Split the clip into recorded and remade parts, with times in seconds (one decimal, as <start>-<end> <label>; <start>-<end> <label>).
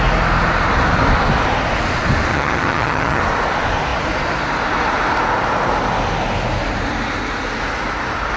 0.0-2.3 recorded; 2.3-3.2 remade; 3.2-8.4 recorded